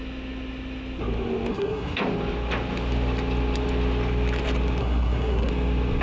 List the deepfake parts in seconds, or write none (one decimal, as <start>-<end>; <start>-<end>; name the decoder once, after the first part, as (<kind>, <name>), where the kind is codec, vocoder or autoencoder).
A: 1.5-2.0 (codec, SNAC); 4.8-5.5